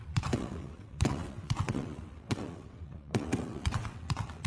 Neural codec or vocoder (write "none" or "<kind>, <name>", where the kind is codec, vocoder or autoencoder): vocoder, WaveNeXt